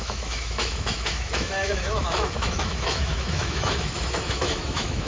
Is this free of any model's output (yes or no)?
no